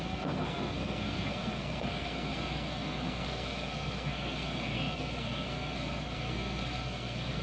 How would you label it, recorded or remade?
remade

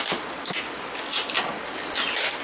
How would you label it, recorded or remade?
recorded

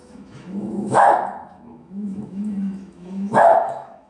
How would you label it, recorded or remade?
remade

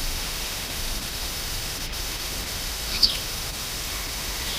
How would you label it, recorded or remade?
remade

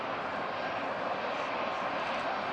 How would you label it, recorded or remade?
recorded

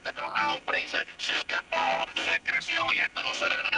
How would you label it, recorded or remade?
remade